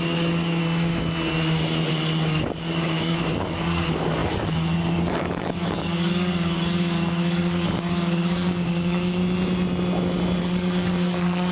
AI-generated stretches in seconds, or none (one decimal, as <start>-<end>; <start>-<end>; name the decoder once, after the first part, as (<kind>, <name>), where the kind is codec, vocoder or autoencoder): 0.0-0.6 (codec, DAC); 1.9-9.2; 10.4-11.5